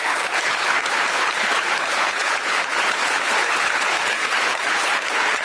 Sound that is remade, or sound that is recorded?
remade